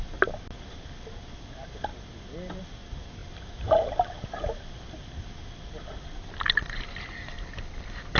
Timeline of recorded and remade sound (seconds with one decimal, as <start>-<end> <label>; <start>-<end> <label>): 0.0-8.2 recorded